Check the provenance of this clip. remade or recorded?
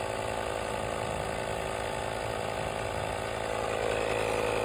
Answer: recorded